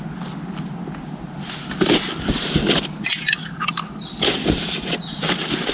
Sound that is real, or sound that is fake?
real